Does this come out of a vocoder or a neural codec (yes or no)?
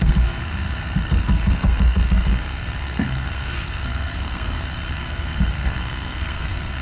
yes